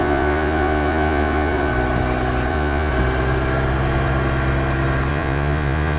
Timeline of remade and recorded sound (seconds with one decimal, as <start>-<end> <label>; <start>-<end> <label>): 0.0-1.7 remade; 1.7-2.5 recorded; 2.5-2.9 remade; 2.9-5.1 recorded; 5.1-6.0 remade